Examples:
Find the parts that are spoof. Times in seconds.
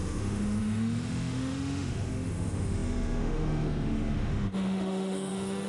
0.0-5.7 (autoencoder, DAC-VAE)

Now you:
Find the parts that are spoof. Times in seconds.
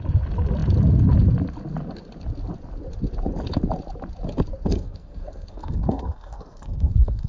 4.7-7.3 (codec, SNAC)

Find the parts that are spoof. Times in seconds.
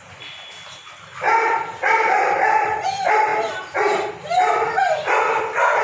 none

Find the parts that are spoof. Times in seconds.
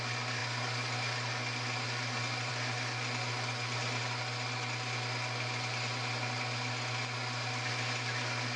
none